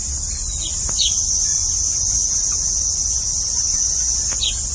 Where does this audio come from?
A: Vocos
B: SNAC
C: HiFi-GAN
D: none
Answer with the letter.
D